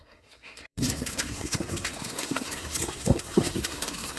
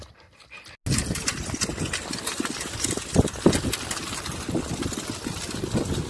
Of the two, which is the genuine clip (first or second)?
second